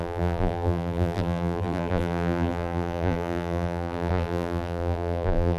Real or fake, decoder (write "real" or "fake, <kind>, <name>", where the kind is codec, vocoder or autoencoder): fake, vocoder, BigVGAN v2